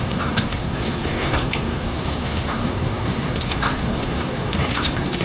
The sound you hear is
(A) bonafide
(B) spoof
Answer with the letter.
B